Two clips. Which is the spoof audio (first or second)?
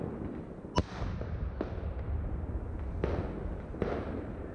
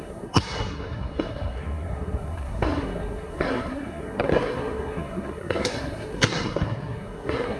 second